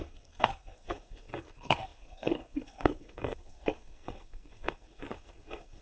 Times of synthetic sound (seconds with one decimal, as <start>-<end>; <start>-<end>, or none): 0.0-5.8